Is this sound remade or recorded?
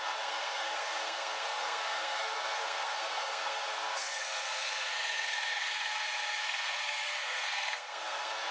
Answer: remade